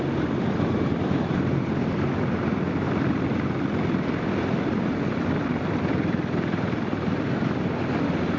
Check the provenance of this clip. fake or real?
real